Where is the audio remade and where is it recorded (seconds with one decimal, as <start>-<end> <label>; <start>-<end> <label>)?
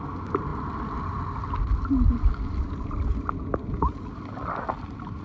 0.0-5.2 recorded